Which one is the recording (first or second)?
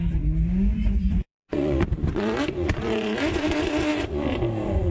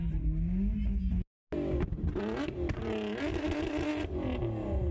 second